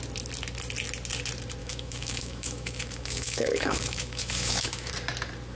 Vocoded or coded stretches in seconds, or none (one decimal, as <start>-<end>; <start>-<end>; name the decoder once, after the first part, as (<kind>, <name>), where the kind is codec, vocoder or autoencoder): 1.6-4.9 (autoencoder, DAC-VAE)